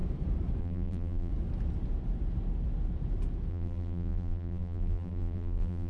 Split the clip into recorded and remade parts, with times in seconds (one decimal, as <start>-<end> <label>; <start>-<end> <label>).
0.0-0.6 recorded; 0.6-1.3 remade; 1.3-3.5 recorded; 3.5-5.9 remade